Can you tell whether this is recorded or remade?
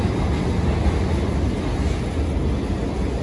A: recorded